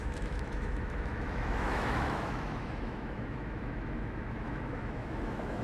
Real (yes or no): no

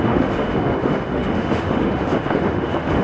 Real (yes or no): no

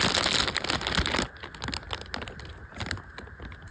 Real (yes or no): yes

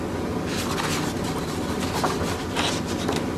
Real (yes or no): yes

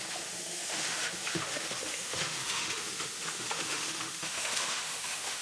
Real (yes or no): no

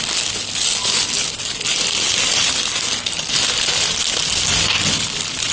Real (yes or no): yes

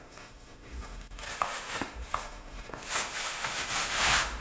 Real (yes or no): no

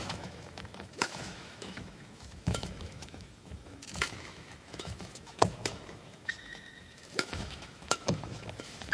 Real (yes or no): no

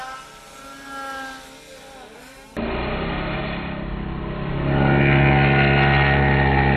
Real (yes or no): yes